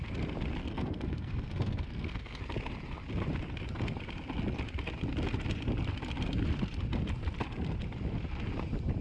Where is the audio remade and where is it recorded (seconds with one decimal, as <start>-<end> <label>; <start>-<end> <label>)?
0.0-0.6 recorded; 0.6-2.4 remade; 2.4-9.0 recorded